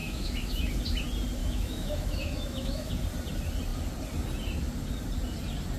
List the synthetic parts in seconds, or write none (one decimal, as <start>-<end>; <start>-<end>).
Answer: 0.0-0.7; 1.4-2.9